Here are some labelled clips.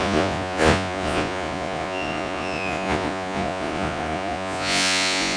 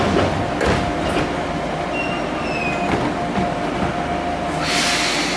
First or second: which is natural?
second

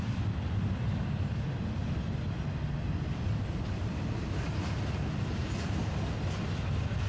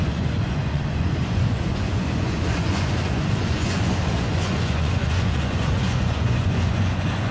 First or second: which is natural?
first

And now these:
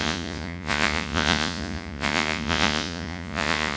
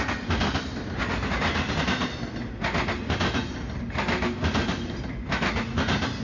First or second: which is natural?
second